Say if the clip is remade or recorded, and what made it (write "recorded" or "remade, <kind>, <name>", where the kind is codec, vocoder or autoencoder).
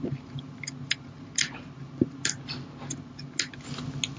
recorded